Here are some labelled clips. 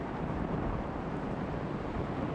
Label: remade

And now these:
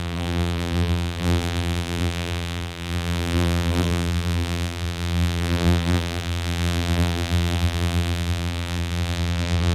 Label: remade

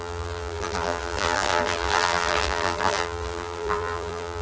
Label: remade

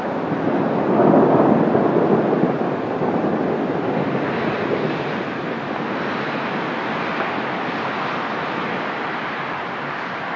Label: recorded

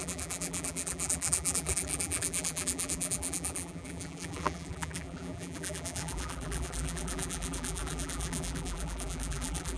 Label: remade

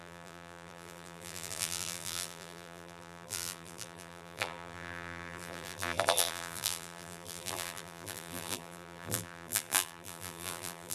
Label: remade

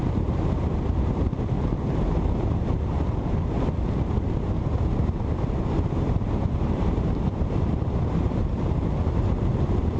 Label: remade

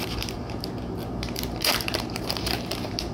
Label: remade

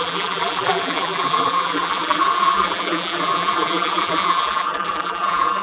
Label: remade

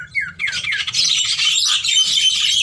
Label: recorded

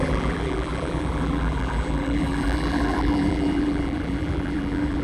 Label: remade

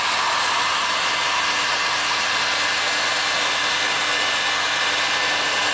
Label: recorded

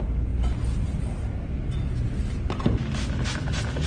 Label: recorded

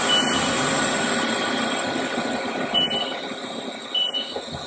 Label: recorded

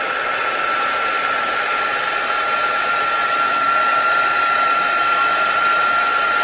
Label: remade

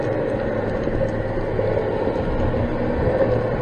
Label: recorded